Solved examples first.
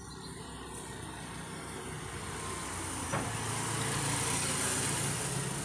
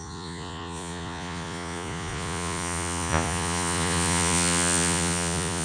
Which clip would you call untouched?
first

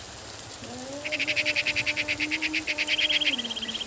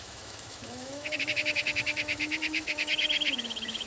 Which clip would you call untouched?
first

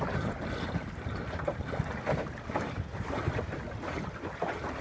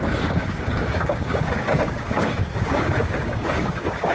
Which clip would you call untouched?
first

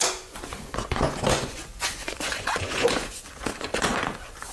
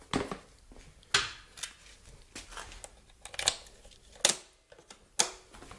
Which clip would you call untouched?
second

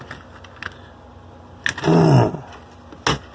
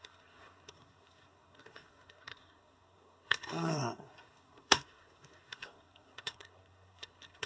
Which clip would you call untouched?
first